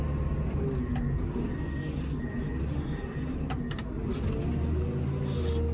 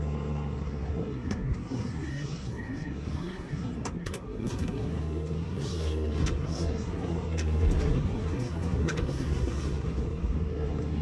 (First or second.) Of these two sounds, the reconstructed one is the second